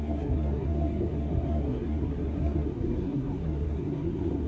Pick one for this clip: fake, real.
fake